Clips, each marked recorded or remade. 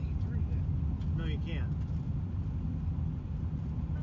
recorded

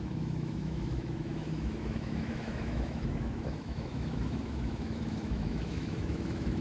remade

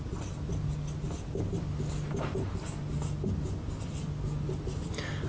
recorded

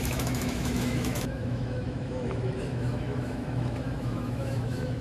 remade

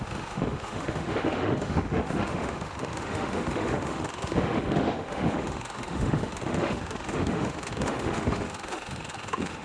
remade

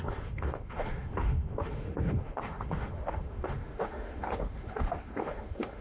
remade